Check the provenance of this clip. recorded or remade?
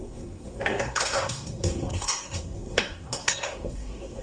remade